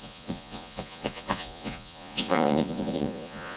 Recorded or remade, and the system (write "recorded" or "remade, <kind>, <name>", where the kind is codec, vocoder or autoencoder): remade, vocoder, Vocos